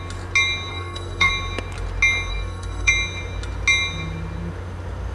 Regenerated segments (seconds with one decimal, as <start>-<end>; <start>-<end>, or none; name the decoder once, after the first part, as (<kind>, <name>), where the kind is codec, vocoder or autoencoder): 0.7-1.3 (codec, SNAC); 2.3-2.9